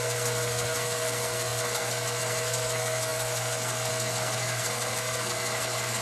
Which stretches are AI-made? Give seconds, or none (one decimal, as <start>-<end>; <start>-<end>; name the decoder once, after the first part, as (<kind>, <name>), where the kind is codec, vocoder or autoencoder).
0.0-6.0 (codec, SNAC)